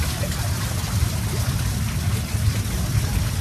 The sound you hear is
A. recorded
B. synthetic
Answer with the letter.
A